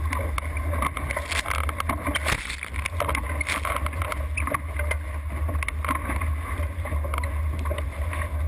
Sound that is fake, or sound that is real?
real